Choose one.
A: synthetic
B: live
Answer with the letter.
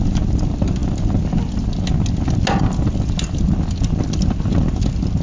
B